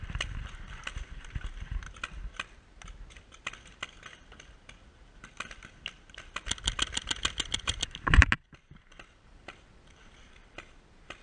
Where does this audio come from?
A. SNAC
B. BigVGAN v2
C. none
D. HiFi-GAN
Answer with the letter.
C